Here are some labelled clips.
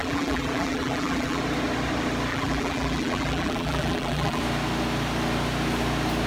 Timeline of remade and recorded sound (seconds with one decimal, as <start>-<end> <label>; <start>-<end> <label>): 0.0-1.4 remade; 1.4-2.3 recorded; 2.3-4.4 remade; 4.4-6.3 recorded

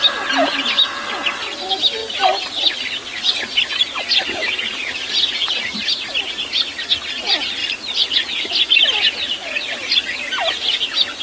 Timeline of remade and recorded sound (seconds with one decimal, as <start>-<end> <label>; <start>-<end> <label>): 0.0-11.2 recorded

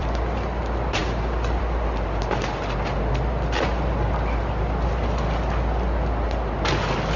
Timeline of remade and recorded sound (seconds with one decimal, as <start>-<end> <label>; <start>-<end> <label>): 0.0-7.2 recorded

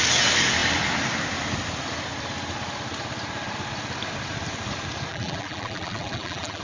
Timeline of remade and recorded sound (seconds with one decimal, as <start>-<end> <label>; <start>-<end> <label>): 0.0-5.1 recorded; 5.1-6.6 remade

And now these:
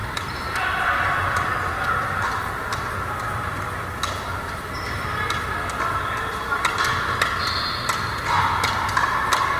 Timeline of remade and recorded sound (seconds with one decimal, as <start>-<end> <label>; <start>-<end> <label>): 0.0-9.6 recorded

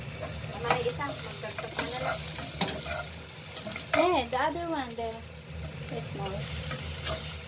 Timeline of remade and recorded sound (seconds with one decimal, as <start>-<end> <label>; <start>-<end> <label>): 0.0-7.5 recorded